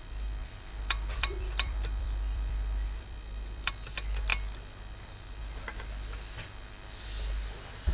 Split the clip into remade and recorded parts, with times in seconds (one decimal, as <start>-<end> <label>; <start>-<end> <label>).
0.0-0.4 recorded; 0.4-3.7 remade; 3.7-7.9 recorded